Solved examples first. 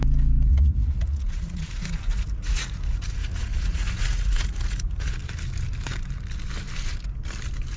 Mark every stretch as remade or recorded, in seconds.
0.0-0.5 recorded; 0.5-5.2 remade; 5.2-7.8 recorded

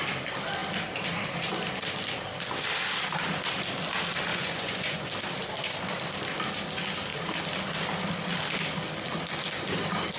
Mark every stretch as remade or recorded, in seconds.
0.0-4.3 recorded; 4.3-5.1 remade; 5.1-10.2 recorded